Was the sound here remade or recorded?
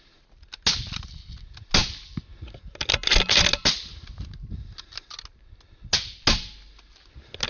recorded